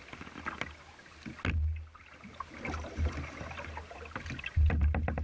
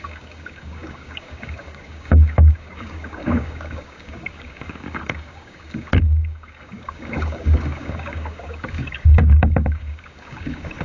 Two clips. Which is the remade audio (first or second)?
second